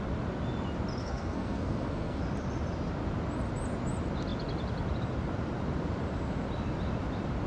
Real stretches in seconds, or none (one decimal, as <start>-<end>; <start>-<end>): 0.0-1.0; 2.2-7.5